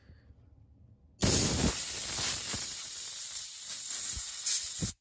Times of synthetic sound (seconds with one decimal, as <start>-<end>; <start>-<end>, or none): none

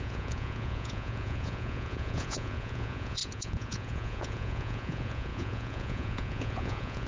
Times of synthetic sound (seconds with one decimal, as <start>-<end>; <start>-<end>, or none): 0.0-7.1

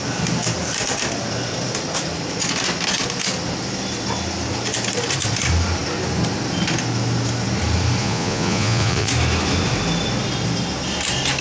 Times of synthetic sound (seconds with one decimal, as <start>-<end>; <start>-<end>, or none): 8.0-9.1

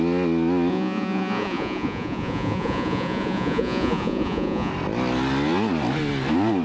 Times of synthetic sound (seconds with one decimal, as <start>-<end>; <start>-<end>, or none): 0.7-4.7

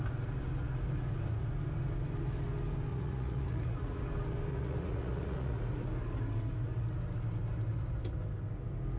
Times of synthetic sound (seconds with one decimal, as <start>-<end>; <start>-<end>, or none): 2.9-4.0; 4.5-5.6